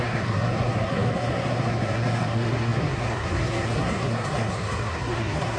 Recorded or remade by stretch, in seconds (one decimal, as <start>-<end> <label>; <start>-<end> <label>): 0.0-5.6 remade